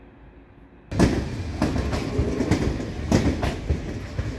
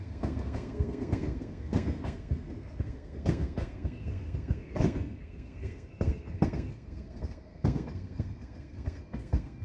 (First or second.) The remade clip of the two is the second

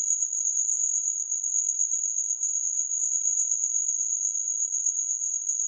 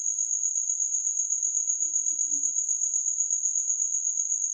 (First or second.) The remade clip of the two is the first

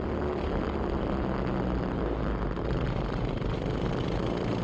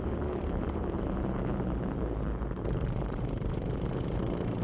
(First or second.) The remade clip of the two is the second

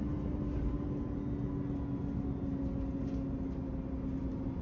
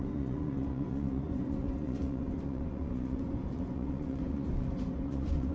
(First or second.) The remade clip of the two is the second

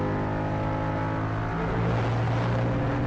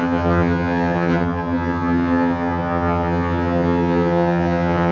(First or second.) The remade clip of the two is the second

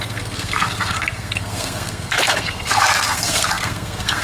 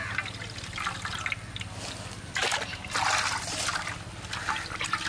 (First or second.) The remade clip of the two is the first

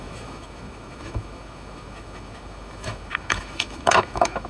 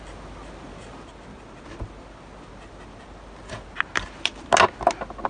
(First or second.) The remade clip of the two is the first